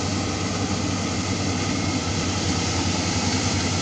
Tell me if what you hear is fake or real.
real